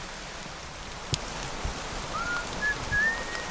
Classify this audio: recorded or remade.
recorded